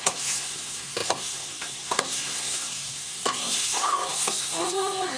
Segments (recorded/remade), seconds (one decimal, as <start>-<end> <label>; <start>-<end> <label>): 0.0-5.2 remade